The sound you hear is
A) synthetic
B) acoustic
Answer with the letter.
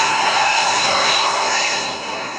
A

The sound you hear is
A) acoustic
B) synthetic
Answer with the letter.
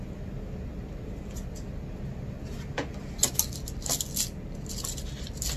A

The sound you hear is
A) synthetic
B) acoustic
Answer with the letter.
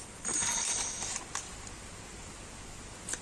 B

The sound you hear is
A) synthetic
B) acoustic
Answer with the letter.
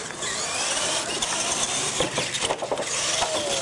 B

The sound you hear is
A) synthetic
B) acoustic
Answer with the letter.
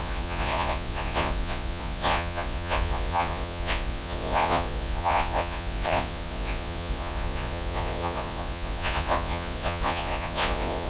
A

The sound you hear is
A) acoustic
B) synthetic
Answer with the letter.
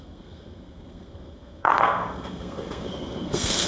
B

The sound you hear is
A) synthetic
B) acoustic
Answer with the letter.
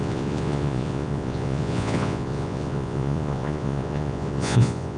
A